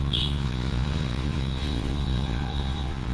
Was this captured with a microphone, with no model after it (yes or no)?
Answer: no